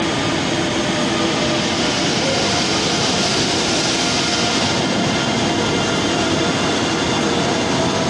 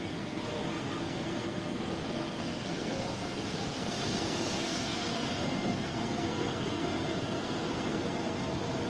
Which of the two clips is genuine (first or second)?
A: first